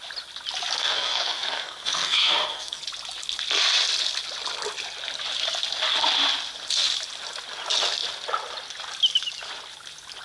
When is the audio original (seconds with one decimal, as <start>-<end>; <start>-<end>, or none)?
0.0-0.8; 2.8-10.2